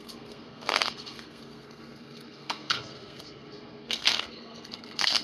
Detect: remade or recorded remade